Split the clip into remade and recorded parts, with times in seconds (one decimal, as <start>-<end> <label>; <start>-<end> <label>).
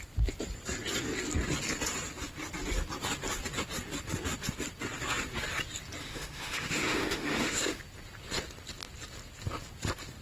0.0-6.0 recorded; 6.0-7.8 remade; 7.8-10.2 recorded